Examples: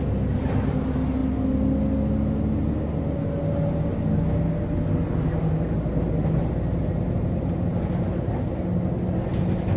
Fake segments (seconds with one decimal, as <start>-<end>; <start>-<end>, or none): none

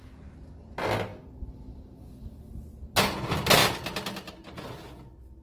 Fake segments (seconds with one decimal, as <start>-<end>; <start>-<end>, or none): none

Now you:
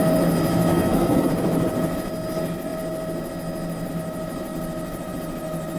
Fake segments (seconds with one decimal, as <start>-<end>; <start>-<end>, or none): 0.7-1.3

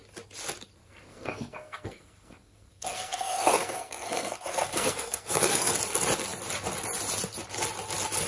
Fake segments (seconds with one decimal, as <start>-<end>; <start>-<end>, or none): 0.8-5.8

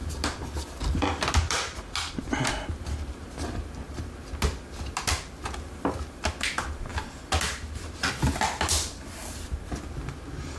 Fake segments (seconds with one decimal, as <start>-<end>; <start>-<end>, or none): none

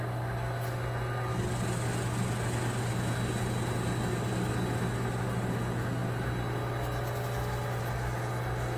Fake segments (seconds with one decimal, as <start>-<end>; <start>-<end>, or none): none